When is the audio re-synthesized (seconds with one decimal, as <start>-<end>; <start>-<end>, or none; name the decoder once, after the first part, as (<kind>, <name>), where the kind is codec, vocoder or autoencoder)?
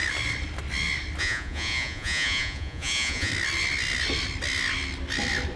1.2-3.3 (vocoder, Vocos)